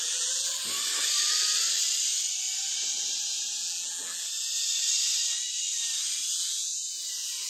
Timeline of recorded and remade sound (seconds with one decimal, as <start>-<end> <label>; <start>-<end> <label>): 0.0-0.6 remade; 0.6-3.6 recorded; 3.6-4.3 remade; 4.3-6.3 recorded; 6.3-7.5 remade